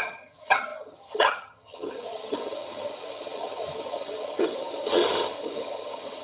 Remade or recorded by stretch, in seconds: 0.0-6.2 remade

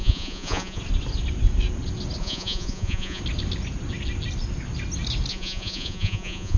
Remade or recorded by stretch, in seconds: 0.0-0.8 remade; 0.8-2.2 recorded; 2.2-3.2 remade; 3.2-5.3 recorded; 5.3-6.6 remade

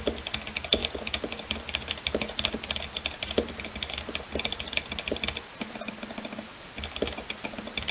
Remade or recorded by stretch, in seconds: 0.0-7.9 recorded

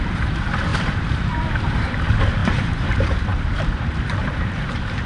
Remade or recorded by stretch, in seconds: 0.0-5.1 remade

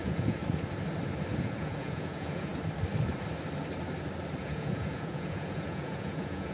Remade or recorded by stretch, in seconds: 0.0-0.4 remade; 0.4-1.4 recorded; 1.4-2.5 remade; 2.5-4.4 recorded; 4.4-6.5 remade